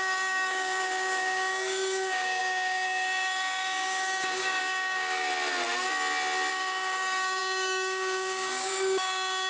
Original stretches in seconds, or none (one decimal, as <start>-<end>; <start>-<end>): 5.3-6.5